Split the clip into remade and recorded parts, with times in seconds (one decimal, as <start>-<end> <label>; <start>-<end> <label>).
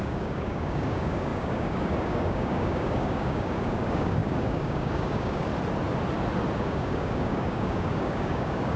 0.0-5.5 remade; 5.5-6.6 recorded; 6.6-8.8 remade